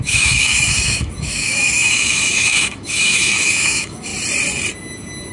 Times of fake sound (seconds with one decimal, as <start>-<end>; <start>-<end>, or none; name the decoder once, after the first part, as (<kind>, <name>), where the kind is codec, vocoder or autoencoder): 0.0-4.1 (autoencoder, DAC-VAE)